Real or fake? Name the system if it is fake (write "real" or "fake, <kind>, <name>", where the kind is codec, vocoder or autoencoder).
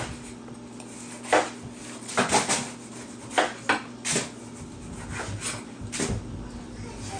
real